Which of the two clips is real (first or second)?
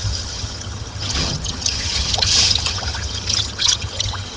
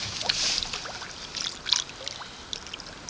second